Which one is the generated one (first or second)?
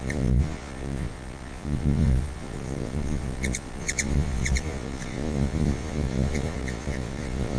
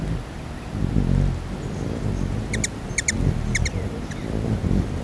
first